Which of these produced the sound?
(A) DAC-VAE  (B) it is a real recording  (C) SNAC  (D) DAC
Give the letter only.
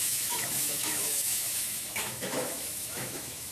A